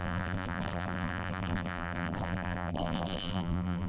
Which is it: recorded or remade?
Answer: remade